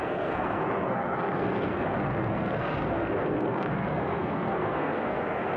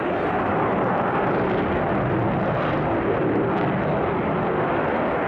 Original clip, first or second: second